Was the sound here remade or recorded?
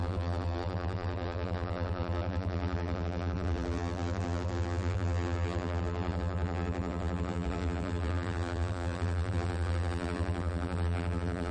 remade